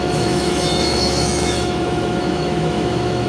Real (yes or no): no